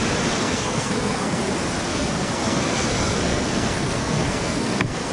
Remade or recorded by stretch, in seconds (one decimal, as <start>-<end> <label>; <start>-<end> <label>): 0.0-0.4 recorded; 0.4-1.4 remade; 1.4-1.9 recorded; 1.9-5.1 remade